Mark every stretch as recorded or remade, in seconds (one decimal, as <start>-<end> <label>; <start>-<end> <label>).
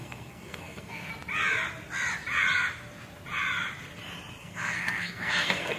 0.0-1.1 remade; 1.1-4.4 recorded; 4.4-5.8 remade